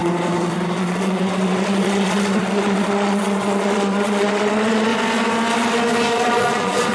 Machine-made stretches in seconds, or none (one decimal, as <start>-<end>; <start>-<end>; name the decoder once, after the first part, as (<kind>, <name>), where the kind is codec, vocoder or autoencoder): 0.0-4.9 (vocoder, Vocos); 6.1-6.9